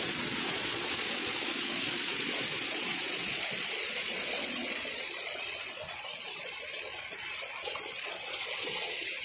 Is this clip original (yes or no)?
no